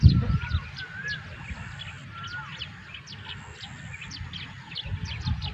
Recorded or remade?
recorded